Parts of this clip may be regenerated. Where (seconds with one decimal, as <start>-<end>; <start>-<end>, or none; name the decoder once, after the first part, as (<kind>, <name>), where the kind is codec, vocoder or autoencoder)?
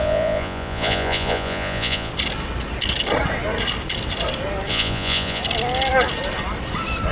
0.0-2.1 (vocoder, Vocos); 4.7-5.4